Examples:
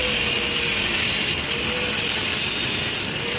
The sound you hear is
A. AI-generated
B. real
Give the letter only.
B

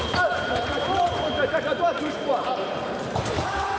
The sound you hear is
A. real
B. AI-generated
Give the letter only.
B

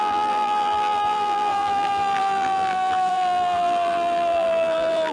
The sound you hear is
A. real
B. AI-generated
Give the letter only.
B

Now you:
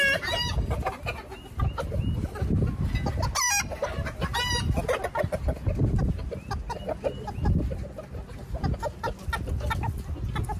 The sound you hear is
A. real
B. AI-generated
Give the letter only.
A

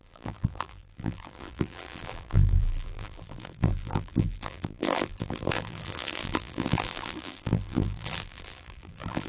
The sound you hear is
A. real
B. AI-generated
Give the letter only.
B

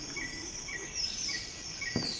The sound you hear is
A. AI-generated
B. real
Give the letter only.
A